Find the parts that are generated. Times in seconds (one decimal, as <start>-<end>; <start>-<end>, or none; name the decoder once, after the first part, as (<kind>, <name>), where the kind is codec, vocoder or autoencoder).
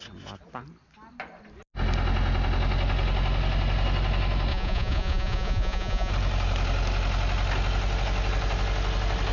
4.5-6.1 (vocoder, Vocos)